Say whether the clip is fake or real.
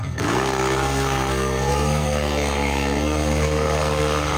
fake